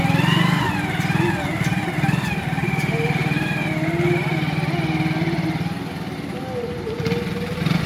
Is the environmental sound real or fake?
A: real